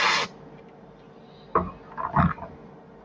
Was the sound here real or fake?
real